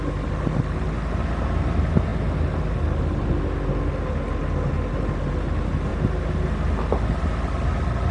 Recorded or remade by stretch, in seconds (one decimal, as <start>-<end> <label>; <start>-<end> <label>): 0.0-8.1 recorded